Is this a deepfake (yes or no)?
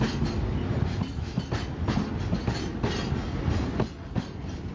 no